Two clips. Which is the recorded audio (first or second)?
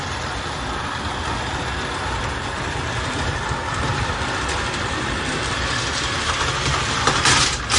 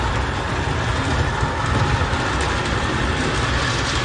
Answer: second